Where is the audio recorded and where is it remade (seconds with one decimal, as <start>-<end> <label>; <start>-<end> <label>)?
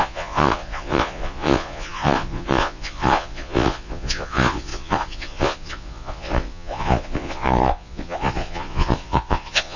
0.0-9.8 remade